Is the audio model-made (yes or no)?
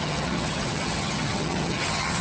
yes